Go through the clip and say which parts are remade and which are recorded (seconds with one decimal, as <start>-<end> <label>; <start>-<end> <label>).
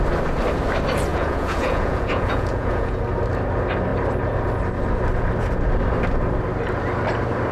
0.0-1.1 recorded; 1.1-3.0 remade; 3.0-7.5 recorded